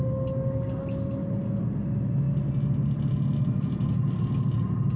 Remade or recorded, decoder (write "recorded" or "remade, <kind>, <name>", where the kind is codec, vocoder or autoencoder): recorded